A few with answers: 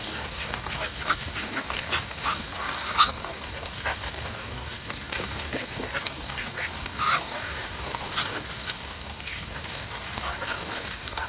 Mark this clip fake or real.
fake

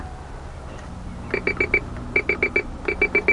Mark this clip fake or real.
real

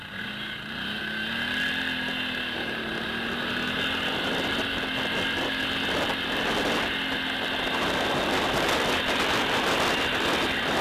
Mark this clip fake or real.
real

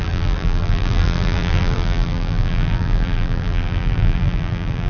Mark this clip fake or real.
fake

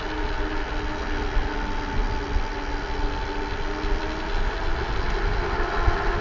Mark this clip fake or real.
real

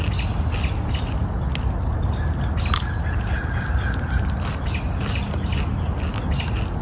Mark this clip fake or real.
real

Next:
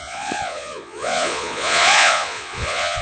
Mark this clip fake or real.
fake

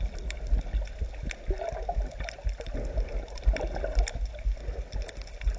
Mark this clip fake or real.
real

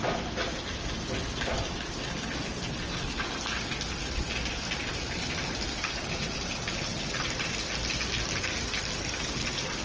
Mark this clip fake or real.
real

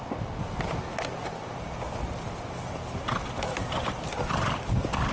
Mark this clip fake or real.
real